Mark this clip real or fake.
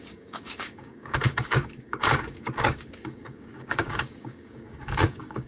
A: fake